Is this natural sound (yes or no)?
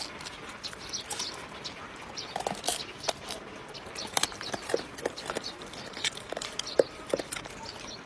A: yes